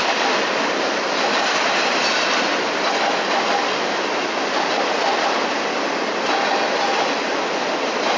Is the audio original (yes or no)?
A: no